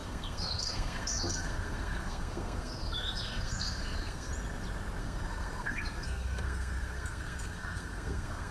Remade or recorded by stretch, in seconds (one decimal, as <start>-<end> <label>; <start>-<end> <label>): 0.0-4.3 remade; 4.3-5.0 recorded; 5.0-8.5 remade